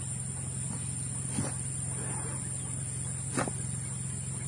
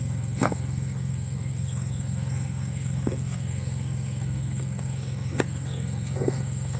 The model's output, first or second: second